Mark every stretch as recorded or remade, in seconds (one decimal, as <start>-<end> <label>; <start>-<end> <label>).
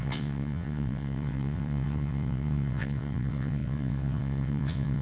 0.0-5.0 remade